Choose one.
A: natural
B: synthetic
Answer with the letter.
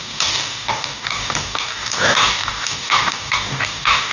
B